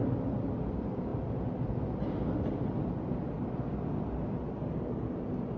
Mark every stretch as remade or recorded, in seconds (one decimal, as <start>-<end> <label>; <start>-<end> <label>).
0.0-5.6 recorded